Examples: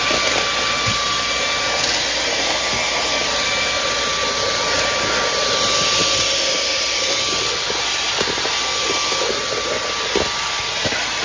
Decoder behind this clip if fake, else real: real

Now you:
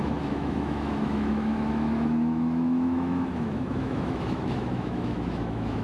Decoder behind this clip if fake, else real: fake, autoencoder, DAC-VAE